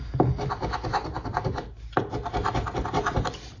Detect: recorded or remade recorded